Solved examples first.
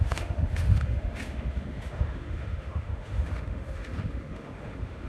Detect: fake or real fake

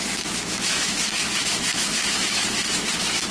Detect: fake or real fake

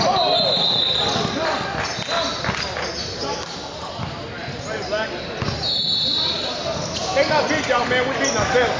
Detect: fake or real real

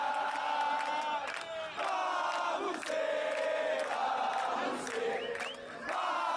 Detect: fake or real real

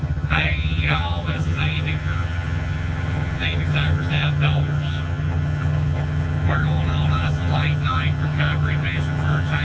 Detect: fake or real fake